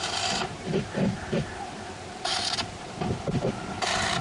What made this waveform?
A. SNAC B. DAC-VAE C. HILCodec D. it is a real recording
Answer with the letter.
D